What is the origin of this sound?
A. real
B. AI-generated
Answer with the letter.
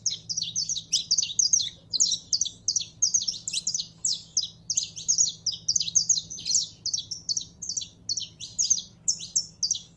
A